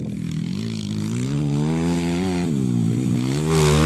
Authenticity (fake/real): real